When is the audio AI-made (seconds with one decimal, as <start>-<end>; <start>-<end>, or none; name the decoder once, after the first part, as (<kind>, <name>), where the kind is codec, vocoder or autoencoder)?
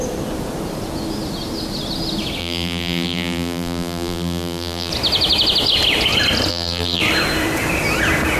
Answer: 2.4-4.9 (vocoder, BigVGAN v2); 6.5-7.0